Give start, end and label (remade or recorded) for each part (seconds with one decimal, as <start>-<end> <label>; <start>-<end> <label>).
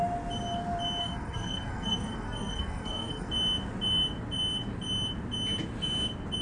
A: 0.0-1.0 recorded; 1.0-3.3 remade; 3.3-6.4 recorded